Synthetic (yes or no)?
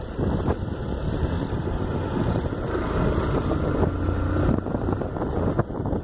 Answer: no